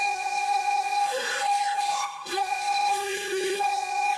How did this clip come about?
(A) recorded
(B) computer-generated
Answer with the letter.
B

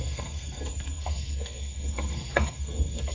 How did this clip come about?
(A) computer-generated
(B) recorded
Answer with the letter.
A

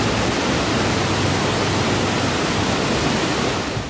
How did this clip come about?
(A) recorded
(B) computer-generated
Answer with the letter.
A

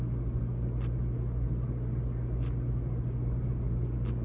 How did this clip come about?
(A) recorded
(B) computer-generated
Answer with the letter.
A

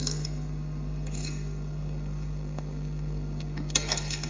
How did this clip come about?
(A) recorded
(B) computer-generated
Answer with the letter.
B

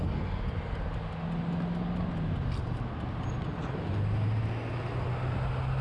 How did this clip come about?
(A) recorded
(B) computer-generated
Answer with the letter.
A